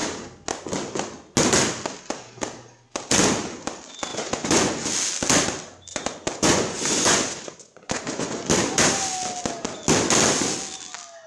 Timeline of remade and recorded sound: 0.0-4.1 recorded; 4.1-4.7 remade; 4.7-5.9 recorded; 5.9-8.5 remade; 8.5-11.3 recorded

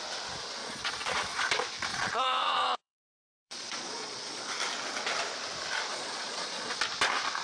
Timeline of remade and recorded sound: 0.0-0.6 recorded; 0.6-1.4 remade; 1.4-1.9 recorded; 1.9-4.5 remade; 4.5-5.9 recorded; 5.9-6.8 remade; 6.8-7.4 recorded